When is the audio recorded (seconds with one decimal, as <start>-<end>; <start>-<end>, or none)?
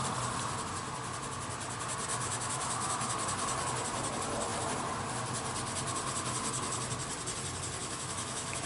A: 0.0-2.1; 3.1-7.8